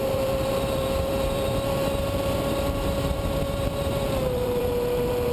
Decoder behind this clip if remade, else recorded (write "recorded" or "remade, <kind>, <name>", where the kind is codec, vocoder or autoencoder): remade, vocoder, BigVGAN v2